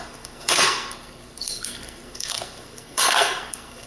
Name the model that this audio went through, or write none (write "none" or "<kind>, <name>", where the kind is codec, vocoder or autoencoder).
codec, SNAC